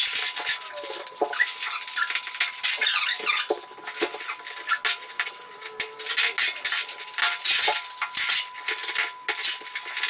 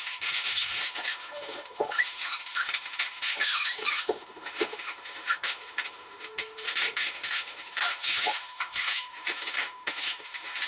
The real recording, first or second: first